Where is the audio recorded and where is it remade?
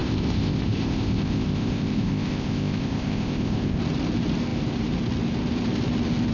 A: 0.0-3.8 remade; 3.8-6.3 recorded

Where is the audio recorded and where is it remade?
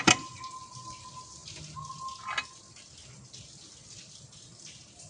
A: 0.0-5.1 recorded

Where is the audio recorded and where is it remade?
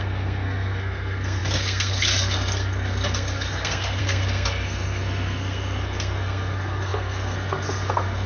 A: 0.0-8.3 remade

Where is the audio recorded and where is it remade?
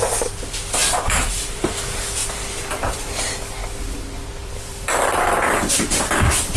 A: 0.0-0.8 recorded; 0.8-1.8 remade; 1.8-2.2 recorded; 2.2-3.4 remade; 3.4-4.4 recorded; 4.4-6.6 remade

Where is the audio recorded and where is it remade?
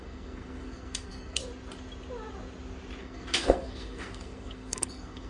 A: 0.0-1.4 remade; 1.4-3.0 recorded; 3.0-5.3 remade